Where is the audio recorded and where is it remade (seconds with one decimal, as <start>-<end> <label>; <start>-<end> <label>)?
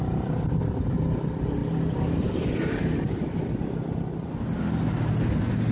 0.0-5.7 recorded